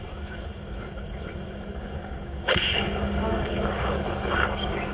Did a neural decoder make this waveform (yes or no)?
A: yes